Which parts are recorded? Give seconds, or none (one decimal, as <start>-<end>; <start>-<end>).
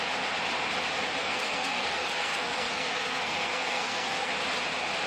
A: 0.0-1.2; 4.3-5.1